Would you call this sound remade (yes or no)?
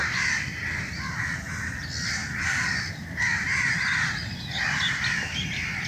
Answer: yes